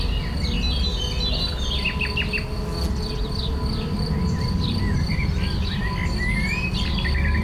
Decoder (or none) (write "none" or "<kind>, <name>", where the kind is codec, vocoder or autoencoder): none